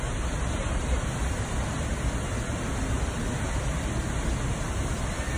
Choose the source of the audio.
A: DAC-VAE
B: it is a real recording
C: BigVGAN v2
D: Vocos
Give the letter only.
B